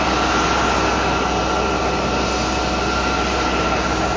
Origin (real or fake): real